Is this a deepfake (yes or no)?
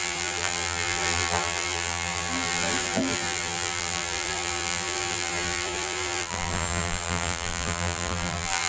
yes